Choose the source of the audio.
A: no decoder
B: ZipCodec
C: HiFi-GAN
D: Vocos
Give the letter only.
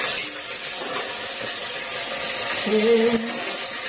A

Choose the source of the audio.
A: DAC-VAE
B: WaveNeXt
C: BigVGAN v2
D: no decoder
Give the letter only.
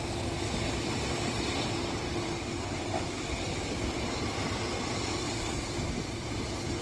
C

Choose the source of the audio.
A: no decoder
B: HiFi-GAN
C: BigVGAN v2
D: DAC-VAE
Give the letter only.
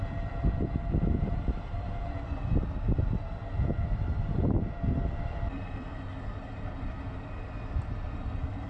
C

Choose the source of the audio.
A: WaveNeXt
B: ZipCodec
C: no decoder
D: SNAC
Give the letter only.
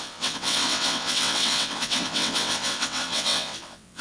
A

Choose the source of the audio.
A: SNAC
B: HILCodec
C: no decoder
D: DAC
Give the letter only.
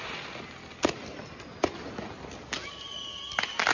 C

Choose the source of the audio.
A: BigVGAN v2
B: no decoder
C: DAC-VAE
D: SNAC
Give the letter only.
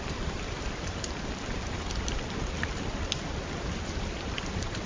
B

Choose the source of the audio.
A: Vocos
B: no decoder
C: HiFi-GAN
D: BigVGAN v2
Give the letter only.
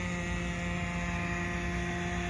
B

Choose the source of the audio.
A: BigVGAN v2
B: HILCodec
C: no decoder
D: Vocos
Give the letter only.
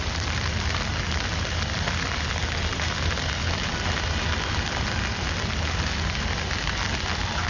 C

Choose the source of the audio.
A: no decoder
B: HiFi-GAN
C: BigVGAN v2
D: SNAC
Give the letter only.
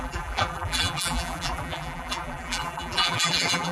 C